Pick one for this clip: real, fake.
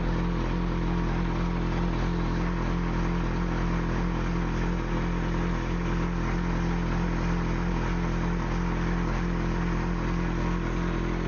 real